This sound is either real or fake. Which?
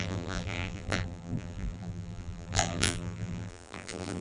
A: fake